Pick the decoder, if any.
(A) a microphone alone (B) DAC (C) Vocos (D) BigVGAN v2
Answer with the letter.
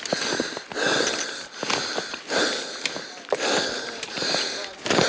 A